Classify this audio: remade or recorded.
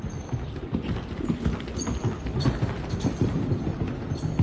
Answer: recorded